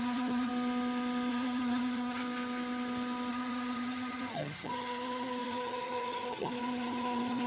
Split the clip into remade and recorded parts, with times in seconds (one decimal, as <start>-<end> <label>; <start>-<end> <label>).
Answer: 0.0-0.5 remade; 0.5-1.3 recorded; 1.3-2.2 remade; 2.2-3.3 recorded; 3.3-7.5 remade